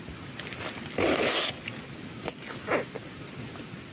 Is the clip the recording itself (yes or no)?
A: yes